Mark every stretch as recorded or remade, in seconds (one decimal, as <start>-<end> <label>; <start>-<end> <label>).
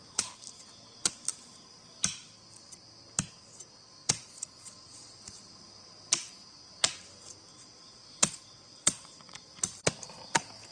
0.0-4.0 recorded; 4.0-5.2 remade; 5.2-7.5 recorded; 7.5-9.5 remade; 9.5-10.7 recorded